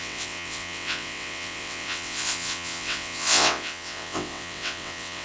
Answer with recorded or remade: remade